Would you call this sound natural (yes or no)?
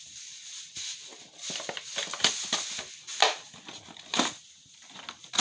yes